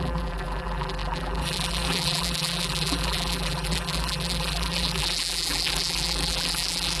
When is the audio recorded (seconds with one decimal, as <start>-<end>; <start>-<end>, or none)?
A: none